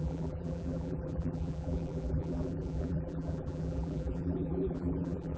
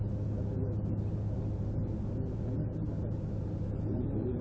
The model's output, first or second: first